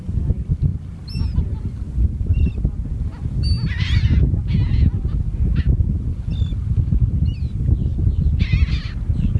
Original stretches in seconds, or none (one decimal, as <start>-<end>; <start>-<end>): 0.0-9.4

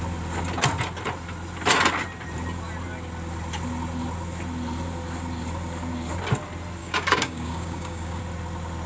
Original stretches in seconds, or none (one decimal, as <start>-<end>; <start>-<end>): 0.0-6.8; 8.2-8.9

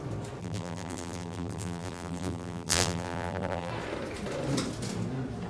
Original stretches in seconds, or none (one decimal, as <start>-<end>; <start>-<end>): 0.0-0.4; 3.7-5.5

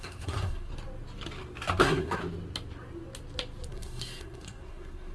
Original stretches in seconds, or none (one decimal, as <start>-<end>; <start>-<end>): 0.7-1.7; 2.2-3.7

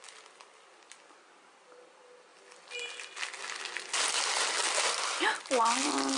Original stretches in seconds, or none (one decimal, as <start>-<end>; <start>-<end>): 0.0-6.2